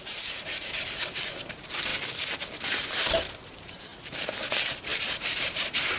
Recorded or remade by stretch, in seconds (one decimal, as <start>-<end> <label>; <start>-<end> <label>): 0.0-1.9 remade; 1.9-3.4 recorded; 3.4-3.9 remade; 3.9-4.5 recorded; 4.5-6.0 remade